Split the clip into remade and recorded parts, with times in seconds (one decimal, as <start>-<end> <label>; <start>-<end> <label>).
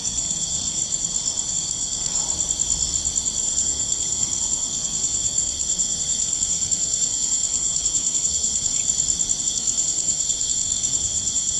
0.0-0.8 remade; 0.8-1.5 recorded; 1.5-2.2 remade; 2.2-3.4 recorded; 3.4-8.8 remade; 8.8-9.4 recorded; 9.4-11.6 remade